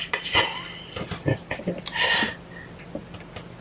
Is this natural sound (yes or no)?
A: yes